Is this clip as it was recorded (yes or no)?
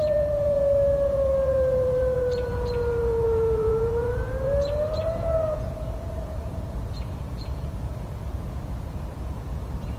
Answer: no